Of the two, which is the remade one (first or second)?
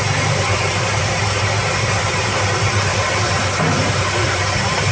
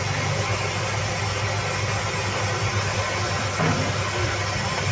first